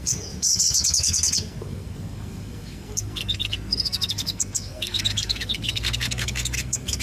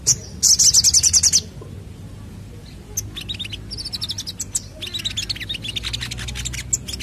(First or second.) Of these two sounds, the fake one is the first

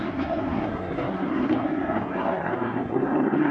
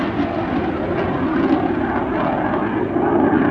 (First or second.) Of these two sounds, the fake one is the first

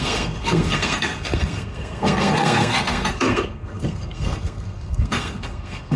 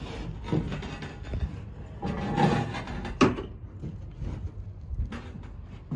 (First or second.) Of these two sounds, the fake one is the first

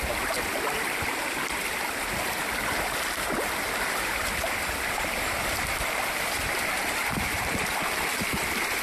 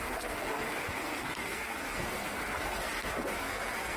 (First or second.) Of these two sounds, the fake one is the second